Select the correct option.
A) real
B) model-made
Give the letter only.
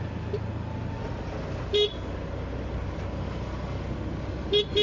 A